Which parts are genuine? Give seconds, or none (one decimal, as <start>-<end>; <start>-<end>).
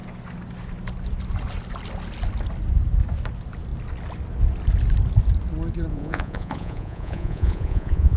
0.0-5.9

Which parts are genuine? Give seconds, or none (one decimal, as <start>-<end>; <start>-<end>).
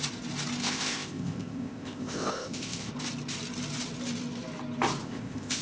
0.0-0.6; 2.9-5.0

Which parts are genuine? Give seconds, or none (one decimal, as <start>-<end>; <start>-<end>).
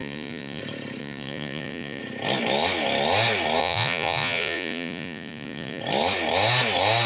0.6-1.0; 2.0-3.6; 5.8-7.1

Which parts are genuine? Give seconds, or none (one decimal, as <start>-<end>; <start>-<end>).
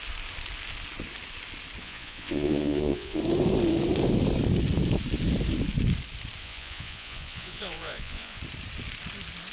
0.0-1.8; 3.2-6.4; 8.4-9.5